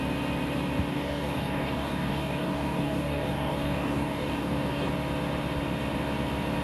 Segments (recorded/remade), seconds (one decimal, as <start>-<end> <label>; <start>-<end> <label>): 0.0-0.9 recorded; 0.9-4.9 remade; 4.9-6.6 recorded